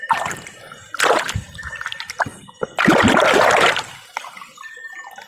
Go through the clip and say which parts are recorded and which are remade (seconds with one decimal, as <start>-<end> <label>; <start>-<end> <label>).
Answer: 0.0-5.3 recorded

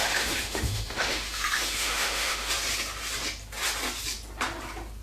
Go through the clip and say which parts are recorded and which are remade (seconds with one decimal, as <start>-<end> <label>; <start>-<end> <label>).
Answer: 0.0-2.5 remade; 2.5-5.0 recorded

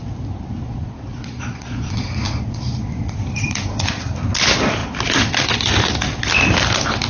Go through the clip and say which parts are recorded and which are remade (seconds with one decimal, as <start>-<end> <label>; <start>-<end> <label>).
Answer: 0.0-0.6 recorded; 0.6-3.8 remade; 3.8-7.1 recorded

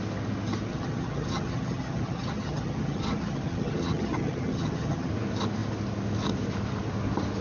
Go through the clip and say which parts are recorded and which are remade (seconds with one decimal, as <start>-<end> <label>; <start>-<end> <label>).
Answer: 0.0-0.7 recorded; 0.7-5.1 remade; 5.1-7.4 recorded

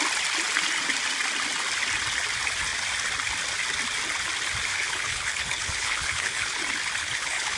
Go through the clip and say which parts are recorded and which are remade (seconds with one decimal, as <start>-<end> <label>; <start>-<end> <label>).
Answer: 0.0-4.7 recorded; 4.7-6.6 remade; 6.6-7.0 recorded; 7.0-7.6 remade

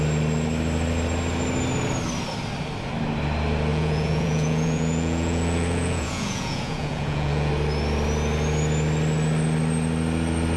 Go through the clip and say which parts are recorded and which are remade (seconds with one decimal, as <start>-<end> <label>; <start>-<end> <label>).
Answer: 0.0-3.7 recorded; 3.7-7.5 remade; 7.5-10.6 recorded

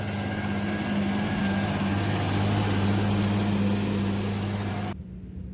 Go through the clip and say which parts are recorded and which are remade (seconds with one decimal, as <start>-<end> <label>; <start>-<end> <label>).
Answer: 0.0-5.5 recorded